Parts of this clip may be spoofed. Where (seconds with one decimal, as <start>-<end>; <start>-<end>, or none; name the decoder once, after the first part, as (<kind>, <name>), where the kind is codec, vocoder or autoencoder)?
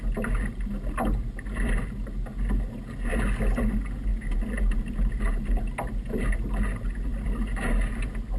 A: 7.1-7.9 (vocoder, BigVGAN v2)